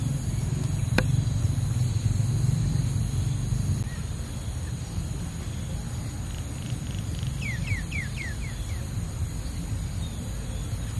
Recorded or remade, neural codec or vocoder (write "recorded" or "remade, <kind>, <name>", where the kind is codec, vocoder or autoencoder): recorded